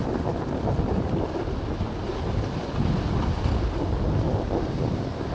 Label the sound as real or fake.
real